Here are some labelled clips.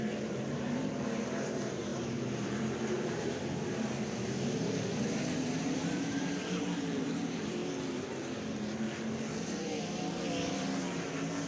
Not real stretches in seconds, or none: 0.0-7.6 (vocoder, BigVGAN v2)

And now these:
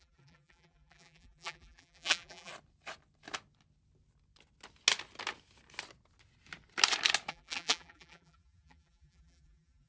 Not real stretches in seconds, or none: 0.0-2.5 (vocoder, BigVGAN v2); 7.3-9.9